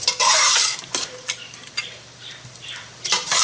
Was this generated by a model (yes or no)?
yes